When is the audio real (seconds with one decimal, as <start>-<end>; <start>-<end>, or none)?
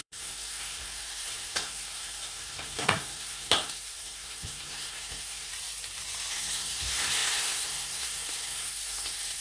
5.5-6.3